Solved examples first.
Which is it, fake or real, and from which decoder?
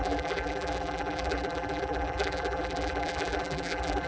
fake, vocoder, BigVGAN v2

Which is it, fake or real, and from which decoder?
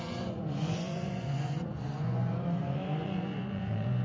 fake, vocoder, Vocos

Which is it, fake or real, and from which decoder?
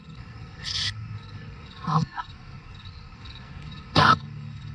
fake, codec, SNAC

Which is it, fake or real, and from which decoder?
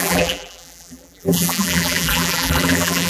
fake, vocoder, BigVGAN v2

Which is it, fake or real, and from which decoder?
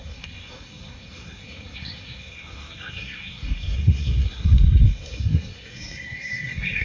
fake, codec, SNAC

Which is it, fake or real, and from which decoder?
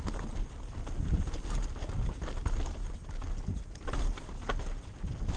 real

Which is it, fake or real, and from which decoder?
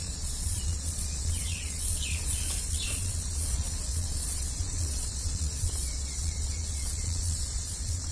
fake, vocoder, Vocos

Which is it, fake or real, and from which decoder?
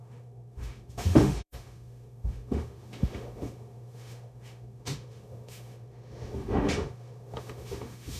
fake, autoencoder, DAC-VAE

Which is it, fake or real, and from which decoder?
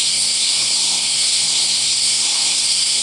fake, codec, SNAC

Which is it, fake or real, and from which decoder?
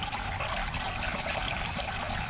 fake, vocoder, BigVGAN v2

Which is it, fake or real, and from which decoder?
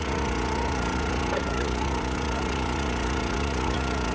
fake, vocoder, Vocos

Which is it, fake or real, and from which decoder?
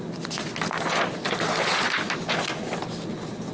real